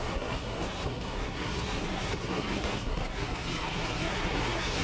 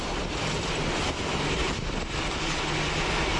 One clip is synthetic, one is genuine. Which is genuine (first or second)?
second